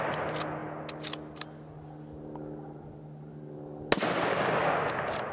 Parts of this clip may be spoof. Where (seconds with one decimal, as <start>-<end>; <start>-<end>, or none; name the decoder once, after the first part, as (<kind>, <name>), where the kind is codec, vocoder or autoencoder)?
none